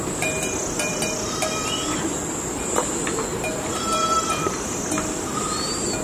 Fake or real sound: real